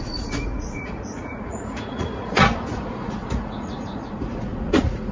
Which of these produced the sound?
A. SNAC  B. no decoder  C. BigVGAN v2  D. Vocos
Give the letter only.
D